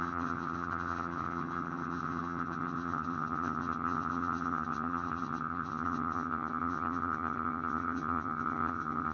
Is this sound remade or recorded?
remade